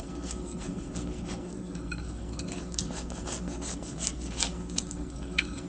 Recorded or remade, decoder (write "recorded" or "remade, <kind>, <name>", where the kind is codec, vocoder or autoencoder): remade, codec, SNAC